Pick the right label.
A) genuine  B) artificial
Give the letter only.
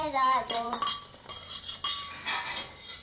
B